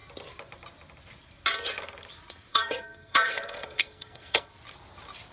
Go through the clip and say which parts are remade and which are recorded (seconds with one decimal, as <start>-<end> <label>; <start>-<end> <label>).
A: 0.0-2.5 recorded; 2.5-4.5 remade; 4.5-5.3 recorded